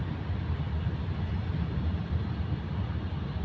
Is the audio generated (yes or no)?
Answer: no